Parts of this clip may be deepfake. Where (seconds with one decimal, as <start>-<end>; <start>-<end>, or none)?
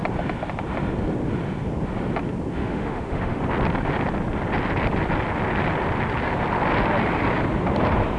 2.6-3.4